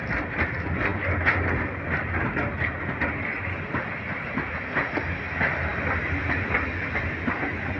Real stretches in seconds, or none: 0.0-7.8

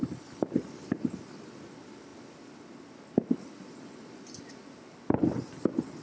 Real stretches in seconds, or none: 0.0-6.0

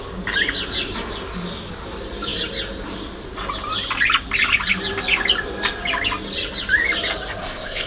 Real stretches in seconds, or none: 0.0-7.4

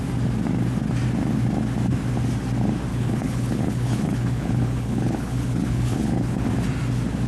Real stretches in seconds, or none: 0.0-2.9; 6.5-7.3

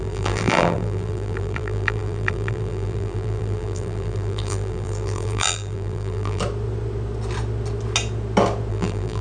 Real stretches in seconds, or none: 6.4-8.7

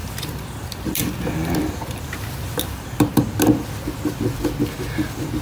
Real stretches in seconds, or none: 3.2-5.4

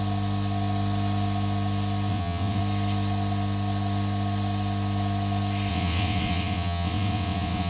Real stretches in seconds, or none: 0.0-2.1; 2.6-5.7